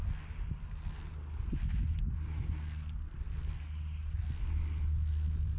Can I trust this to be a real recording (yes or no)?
yes